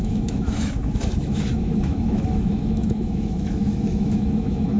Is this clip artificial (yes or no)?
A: yes